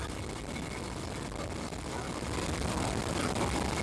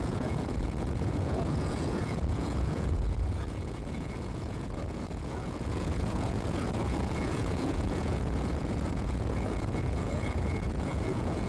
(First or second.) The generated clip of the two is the second